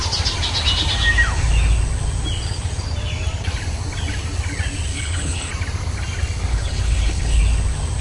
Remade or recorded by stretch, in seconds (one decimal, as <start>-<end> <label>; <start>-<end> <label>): 0.0-4.9 recorded; 4.9-5.5 remade; 5.5-6.5 recorded; 6.5-7.4 remade; 7.4-8.0 recorded